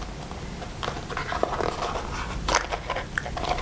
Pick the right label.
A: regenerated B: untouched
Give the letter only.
B